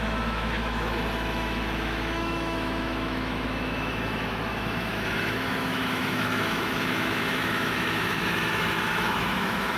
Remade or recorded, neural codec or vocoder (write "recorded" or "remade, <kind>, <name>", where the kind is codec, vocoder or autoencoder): remade, autoencoder, DAC-VAE